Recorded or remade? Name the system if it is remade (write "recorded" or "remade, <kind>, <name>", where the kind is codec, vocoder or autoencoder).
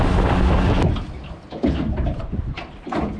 recorded